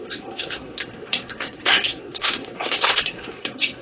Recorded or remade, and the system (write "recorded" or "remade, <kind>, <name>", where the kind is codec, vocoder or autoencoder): remade, codec, SNAC